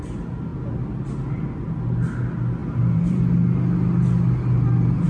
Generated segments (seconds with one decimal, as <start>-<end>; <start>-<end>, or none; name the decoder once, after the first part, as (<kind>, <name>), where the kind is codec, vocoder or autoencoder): 2.6-3.2 (vocoder, BigVGAN v2)